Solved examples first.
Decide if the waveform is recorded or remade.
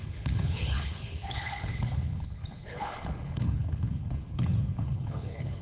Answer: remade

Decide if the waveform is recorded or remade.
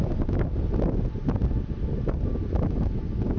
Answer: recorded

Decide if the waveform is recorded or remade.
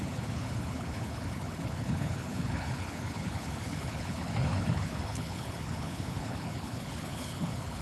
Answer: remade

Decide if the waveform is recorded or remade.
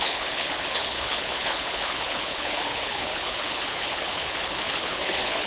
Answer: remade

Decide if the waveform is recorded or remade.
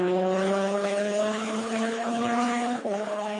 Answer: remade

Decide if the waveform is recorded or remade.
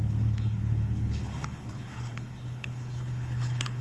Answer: remade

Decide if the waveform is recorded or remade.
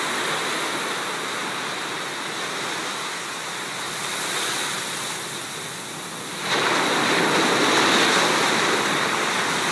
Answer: recorded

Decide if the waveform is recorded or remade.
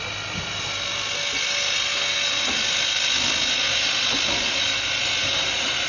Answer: recorded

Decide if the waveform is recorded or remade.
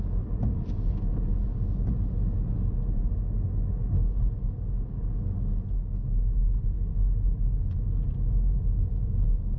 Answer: recorded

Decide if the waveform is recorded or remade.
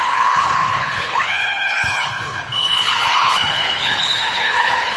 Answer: remade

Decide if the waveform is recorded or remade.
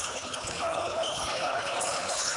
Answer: remade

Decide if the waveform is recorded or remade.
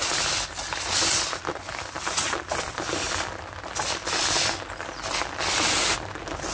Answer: recorded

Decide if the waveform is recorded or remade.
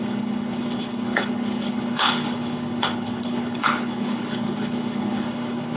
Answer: remade